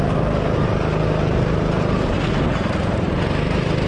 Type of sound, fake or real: real